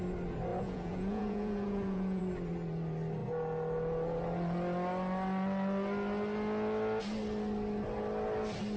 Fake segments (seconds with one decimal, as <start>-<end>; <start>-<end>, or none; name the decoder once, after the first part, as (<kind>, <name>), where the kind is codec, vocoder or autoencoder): 0.5-2.2 (vocoder, Vocos)